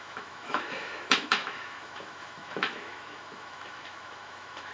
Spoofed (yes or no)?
yes